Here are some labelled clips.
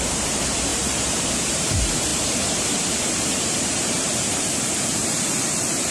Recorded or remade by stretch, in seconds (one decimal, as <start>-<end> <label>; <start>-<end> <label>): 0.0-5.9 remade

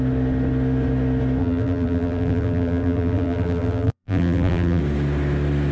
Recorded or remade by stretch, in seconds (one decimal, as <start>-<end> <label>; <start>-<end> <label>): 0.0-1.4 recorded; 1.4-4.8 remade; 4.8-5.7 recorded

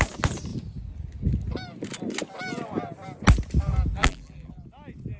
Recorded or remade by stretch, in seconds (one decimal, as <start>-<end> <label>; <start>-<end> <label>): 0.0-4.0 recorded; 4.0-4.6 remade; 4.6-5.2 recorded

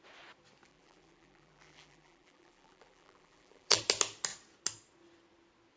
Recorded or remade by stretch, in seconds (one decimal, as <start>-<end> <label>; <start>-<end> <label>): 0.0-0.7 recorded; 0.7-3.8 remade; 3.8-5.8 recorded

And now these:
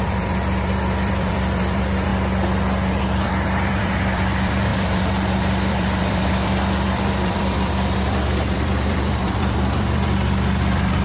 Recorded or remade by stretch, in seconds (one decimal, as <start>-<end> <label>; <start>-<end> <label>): 0.0-2.1 remade; 2.1-3.0 recorded; 3.0-11.0 remade